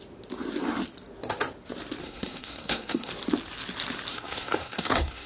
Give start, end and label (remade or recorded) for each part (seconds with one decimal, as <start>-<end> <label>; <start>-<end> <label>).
0.0-2.0 recorded; 2.0-3.1 remade; 3.1-4.1 recorded; 4.1-5.3 remade